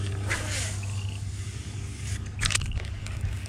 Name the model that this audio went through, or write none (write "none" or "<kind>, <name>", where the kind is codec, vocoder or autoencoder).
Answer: codec, DAC